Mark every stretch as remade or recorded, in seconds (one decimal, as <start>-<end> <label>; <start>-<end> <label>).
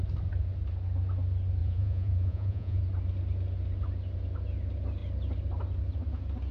0.0-1.6 recorded; 1.6-2.8 remade; 2.8-6.5 recorded